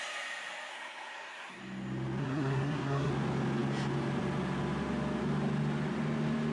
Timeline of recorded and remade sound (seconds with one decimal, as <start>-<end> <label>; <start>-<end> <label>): 0.0-0.7 recorded; 0.7-1.6 remade; 1.6-2.2 recorded; 2.2-3.1 remade; 3.1-6.5 recorded